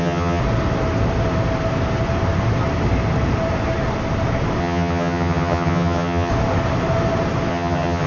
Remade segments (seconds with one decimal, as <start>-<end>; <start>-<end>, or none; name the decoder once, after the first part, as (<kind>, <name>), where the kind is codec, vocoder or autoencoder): 0.0-0.4 (vocoder, HiFi-GAN); 4.6-6.3; 7.5-8.1